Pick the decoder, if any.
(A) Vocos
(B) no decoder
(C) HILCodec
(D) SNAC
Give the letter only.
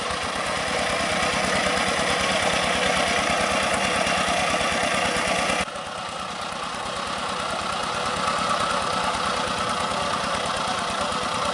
B